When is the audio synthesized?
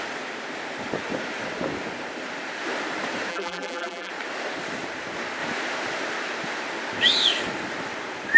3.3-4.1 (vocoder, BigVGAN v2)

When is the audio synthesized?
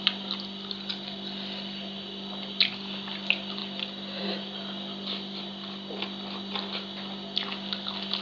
none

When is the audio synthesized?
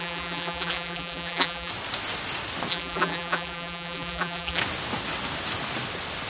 0.0-1.7 (vocoder, BigVGAN v2); 2.7-4.6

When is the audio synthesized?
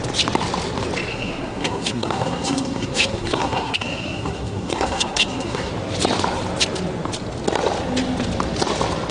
1.1-5.7 (codec, SNAC)